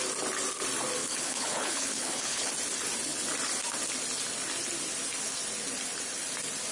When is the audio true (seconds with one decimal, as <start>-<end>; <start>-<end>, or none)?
0.0-1.0; 2.5-6.7